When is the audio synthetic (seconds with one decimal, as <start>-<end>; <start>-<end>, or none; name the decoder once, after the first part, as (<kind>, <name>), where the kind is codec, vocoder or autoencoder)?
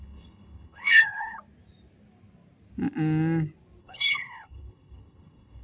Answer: 0.0-1.4 (codec, HILCodec); 3.8-5.6